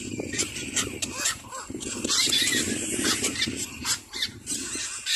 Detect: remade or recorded remade